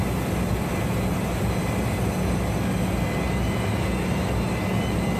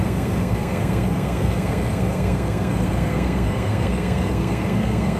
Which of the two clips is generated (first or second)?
second